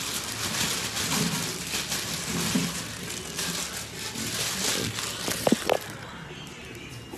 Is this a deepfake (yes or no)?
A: no